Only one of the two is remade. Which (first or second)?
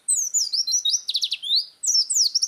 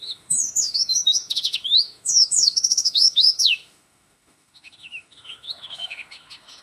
second